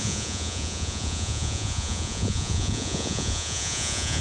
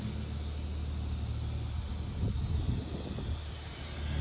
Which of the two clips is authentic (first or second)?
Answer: second